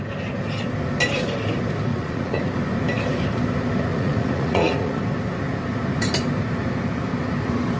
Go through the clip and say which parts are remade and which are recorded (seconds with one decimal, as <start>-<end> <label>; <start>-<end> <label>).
0.0-1.9 recorded; 1.9-2.4 remade; 2.4-3.9 recorded; 3.9-5.0 remade; 5.0-7.8 recorded